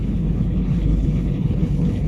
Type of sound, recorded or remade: remade